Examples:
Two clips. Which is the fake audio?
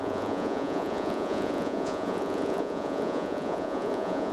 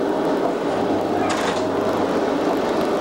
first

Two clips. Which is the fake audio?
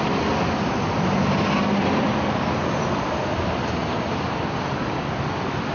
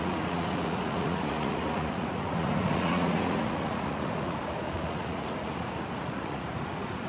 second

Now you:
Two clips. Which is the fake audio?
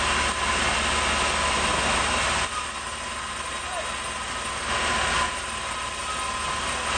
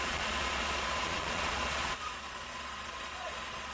second